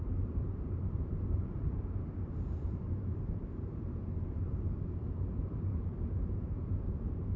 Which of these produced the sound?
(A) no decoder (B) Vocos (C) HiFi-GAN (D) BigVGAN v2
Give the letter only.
D